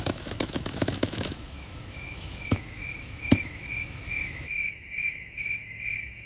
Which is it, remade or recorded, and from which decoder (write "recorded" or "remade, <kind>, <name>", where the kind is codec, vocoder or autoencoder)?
remade, autoencoder, DAC-VAE